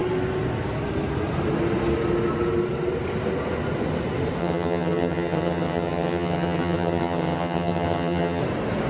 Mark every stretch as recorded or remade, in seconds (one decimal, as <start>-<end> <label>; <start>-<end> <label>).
0.0-4.4 recorded; 4.4-8.4 remade; 8.4-8.9 recorded